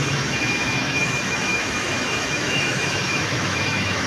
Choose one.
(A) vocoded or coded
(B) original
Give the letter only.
A